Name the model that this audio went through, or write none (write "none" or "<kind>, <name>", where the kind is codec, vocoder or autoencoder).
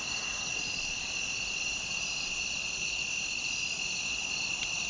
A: none